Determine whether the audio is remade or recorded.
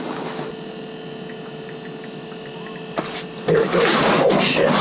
recorded